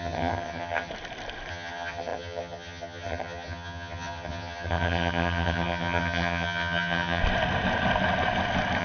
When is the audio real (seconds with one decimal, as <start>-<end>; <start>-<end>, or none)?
0.9-1.5; 7.2-8.8